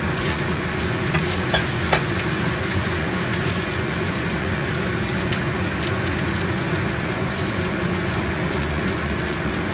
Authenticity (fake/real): fake